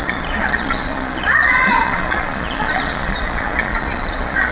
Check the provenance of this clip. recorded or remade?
remade